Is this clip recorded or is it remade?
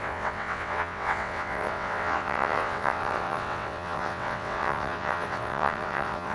remade